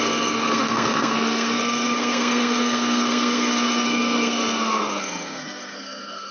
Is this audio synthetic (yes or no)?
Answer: yes